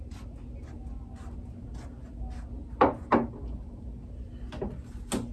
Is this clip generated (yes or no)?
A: no